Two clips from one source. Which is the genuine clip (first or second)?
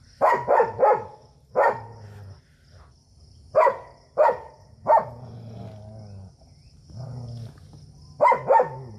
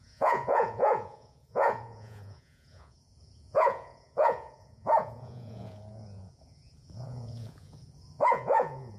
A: first